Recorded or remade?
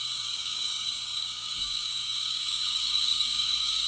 remade